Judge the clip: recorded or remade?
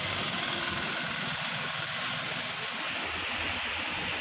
recorded